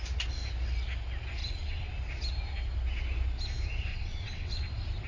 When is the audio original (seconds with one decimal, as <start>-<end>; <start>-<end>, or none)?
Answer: 0.0-1.4; 1.9-3.9; 4.6-5.1